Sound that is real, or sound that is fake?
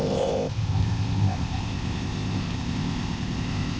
fake